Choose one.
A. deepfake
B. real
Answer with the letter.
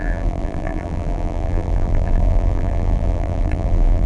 A